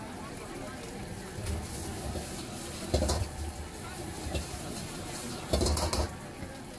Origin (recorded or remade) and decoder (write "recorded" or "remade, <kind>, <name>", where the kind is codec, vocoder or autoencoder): recorded